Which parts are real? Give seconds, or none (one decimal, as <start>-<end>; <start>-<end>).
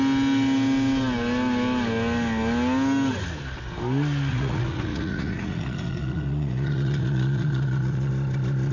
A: 0.0-4.3; 8.1-8.7